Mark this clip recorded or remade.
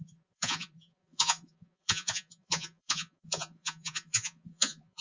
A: remade